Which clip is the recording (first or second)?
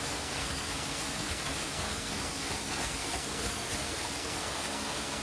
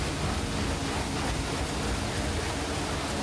second